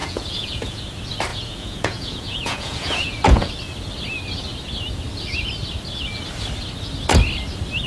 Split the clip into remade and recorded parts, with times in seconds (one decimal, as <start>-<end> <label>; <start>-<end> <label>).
0.0-0.8 remade; 0.8-1.3 recorded; 1.3-3.5 remade; 3.5-7.9 recorded